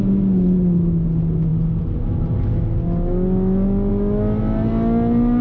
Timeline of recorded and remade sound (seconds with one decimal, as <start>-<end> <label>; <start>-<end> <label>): 0.0-5.4 recorded

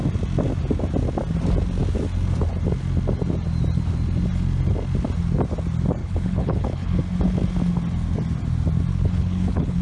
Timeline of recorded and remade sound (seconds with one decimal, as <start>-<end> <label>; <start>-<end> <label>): 0.0-6.0 recorded; 6.0-7.0 remade; 7.0-8.9 recorded; 8.9-9.8 remade

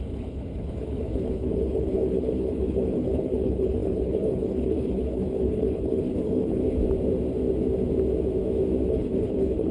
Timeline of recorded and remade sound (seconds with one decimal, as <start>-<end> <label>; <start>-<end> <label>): 0.0-6.6 remade; 6.6-8.9 recorded; 8.9-9.7 remade

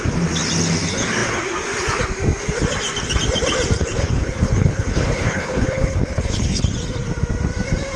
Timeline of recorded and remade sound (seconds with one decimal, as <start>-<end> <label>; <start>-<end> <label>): 0.0-3.8 recorded; 3.8-6.6 remade; 6.6-8.0 recorded

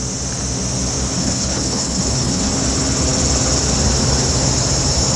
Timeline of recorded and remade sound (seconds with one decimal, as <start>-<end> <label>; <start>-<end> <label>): 0.0-1.2 recorded; 1.2-2.5 remade; 2.5-5.2 recorded